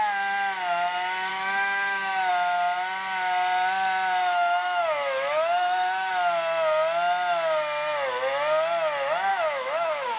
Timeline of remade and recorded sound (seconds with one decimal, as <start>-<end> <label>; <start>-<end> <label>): 0.0-1.3 recorded; 1.3-2.3 remade; 2.3-4.2 recorded; 4.2-6.1 remade; 6.1-9.3 recorded; 9.3-10.2 remade